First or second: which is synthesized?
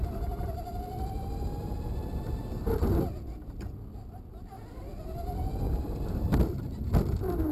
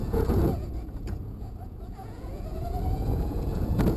second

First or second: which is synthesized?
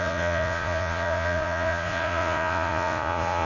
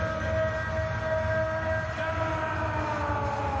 first